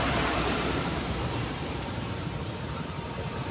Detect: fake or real fake